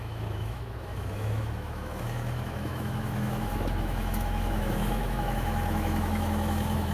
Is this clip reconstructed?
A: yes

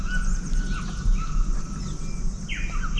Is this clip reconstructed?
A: no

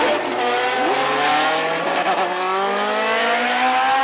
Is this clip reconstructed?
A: no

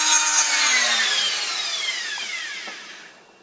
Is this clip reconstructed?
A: yes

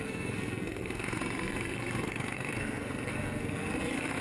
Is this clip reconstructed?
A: yes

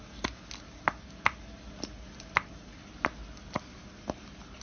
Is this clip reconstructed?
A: no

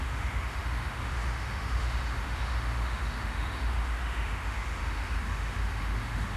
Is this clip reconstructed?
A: yes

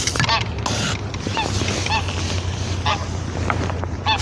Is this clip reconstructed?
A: no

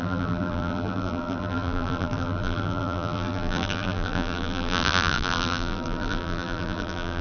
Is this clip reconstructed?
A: yes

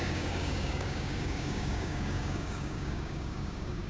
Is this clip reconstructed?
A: yes